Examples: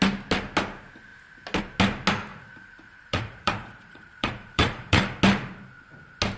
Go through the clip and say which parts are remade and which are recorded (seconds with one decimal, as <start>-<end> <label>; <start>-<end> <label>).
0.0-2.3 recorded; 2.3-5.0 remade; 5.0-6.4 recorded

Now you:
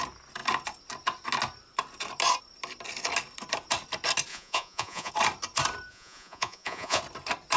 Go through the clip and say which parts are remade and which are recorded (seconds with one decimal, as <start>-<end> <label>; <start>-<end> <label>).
0.0-4.3 recorded; 4.3-5.1 remade; 5.1-5.9 recorded; 5.9-7.0 remade; 7.0-7.6 recorded

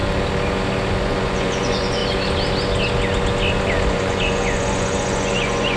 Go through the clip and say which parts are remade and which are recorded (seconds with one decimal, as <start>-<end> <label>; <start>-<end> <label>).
0.0-0.9 recorded; 0.9-2.0 remade; 2.0-3.9 recorded; 3.9-5.8 remade